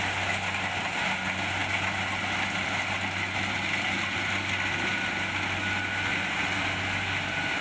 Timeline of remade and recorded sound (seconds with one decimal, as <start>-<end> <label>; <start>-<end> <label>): 0.0-7.6 recorded